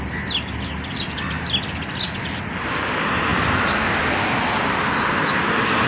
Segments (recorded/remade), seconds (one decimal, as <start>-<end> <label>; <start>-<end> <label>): 0.0-5.9 recorded